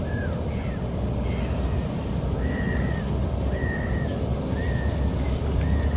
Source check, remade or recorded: recorded